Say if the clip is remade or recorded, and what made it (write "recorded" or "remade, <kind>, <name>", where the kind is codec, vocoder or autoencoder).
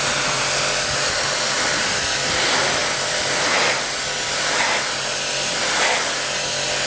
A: recorded